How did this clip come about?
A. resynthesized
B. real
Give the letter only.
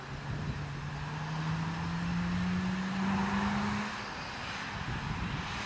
B